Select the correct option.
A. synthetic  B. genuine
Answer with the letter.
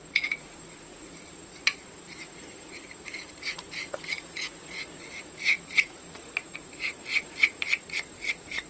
A